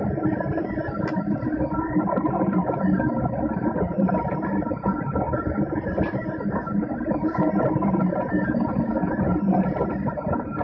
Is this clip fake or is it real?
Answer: real